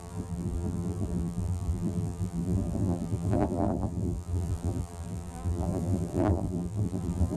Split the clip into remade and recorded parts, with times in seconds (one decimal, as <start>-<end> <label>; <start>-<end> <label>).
0.0-7.4 remade